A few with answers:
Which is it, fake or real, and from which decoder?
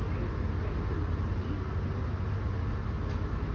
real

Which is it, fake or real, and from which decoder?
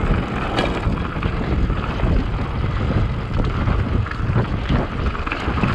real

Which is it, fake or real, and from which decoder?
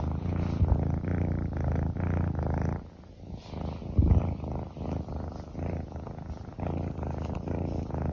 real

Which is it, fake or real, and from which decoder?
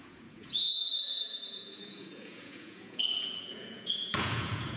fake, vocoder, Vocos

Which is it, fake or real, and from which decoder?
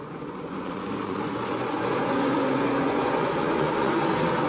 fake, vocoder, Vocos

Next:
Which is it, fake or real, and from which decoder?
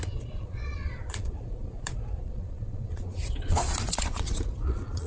fake, vocoder, Vocos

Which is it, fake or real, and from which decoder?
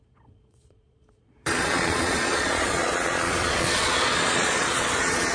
fake, vocoder, Vocos